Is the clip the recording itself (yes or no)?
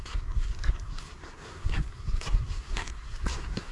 no